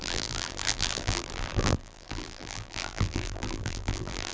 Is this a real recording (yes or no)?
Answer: no